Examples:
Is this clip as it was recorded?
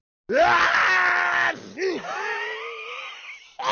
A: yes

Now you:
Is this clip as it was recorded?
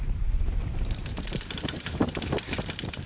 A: no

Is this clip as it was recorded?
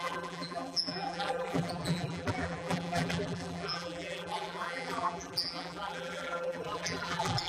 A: no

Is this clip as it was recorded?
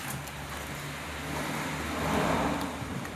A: no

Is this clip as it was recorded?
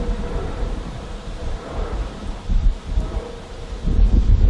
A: no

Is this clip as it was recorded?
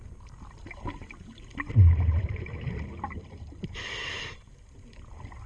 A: yes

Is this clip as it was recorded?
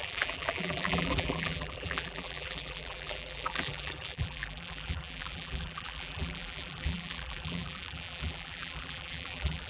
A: no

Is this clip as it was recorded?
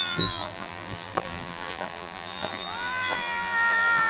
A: no